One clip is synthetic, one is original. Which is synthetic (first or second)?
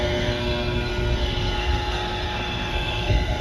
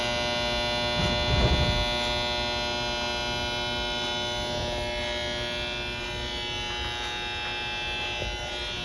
first